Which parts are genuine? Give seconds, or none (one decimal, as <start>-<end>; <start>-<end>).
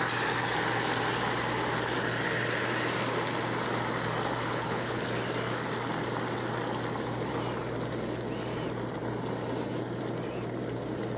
0.0-4.4; 5.0-11.2